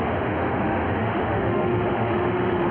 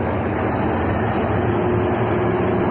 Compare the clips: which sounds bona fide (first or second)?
second